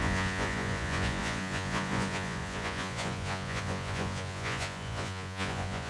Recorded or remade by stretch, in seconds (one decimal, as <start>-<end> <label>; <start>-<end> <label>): 0.0-5.9 remade